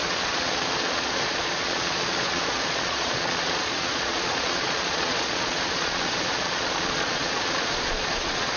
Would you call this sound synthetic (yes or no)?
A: yes